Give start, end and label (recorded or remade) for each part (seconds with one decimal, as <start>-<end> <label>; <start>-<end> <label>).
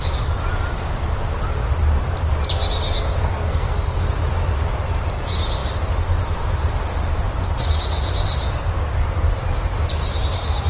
0.0-3.2 recorded; 3.2-4.1 remade; 4.1-10.7 recorded